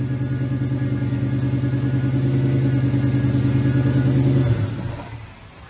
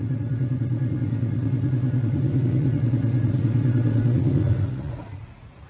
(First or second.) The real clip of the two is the first